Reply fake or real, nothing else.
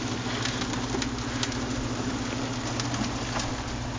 real